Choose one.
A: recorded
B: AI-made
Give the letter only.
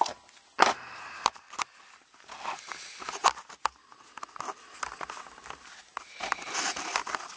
A